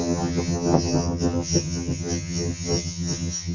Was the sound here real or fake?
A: fake